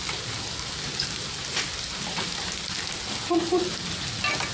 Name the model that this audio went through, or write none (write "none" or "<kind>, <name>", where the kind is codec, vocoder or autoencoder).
none